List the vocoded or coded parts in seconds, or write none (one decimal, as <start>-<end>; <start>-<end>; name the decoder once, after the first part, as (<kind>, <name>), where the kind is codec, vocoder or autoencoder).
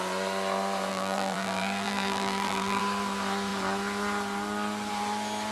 0.9-2.8 (vocoder, BigVGAN v2)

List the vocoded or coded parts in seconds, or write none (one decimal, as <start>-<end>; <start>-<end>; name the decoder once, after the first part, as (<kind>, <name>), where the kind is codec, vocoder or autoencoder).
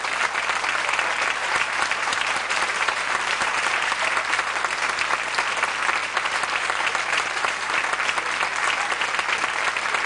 1.4-4.4 (vocoder, BigVGAN v2); 6.0-7.7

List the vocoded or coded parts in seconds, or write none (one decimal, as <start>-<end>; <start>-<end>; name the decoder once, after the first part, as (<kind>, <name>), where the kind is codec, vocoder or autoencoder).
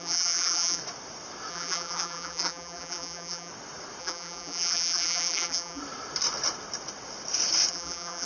0.0-0.8 (vocoder, BigVGAN v2); 1.5-3.5; 4.0-5.8; 7.7-8.3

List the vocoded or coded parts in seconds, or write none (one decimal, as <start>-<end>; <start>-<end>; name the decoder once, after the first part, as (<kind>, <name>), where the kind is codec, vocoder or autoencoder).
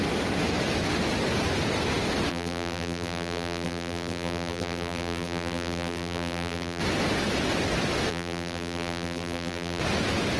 2.3-6.8 (vocoder, BigVGAN v2); 8.1-9.8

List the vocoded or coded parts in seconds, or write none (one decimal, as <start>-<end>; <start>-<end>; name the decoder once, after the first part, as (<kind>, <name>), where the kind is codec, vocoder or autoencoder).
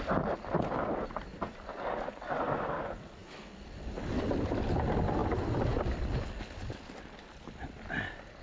5.2-6.0 (vocoder, BigVGAN v2)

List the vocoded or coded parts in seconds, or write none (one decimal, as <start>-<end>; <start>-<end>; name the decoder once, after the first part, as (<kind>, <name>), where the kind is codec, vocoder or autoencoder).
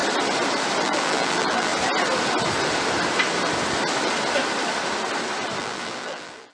0.8-1.7 (vocoder, BigVGAN v2); 5.6-6.5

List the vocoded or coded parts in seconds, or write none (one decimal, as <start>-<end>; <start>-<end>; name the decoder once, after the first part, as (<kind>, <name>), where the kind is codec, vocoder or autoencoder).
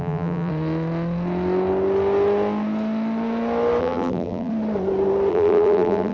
0.0-0.5 (vocoder, BigVGAN v2); 3.8-4.5; 5.3-6.1